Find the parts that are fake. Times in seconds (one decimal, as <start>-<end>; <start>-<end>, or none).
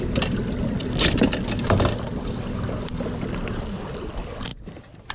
0.0-5.1